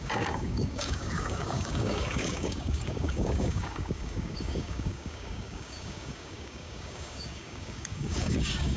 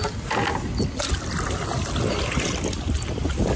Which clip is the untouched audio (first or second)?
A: second